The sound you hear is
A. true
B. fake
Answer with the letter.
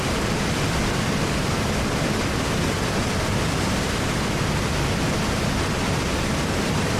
A